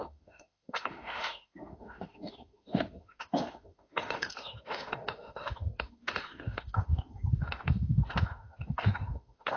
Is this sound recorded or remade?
remade